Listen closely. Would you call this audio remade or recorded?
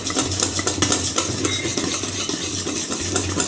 recorded